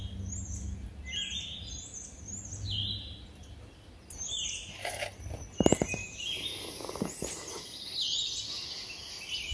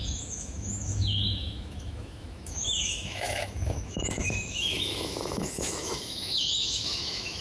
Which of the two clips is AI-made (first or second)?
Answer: second